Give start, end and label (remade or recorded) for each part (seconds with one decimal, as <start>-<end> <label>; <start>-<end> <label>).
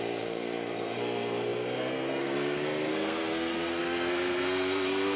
0.0-5.2 remade